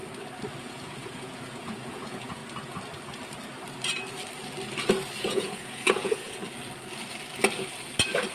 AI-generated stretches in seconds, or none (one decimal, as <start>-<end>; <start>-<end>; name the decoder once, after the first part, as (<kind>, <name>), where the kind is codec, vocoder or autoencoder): 0.6-2.4 (vocoder, Vocos); 5.2-6.4